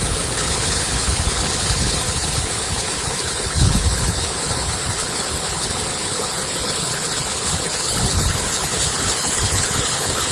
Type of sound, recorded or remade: remade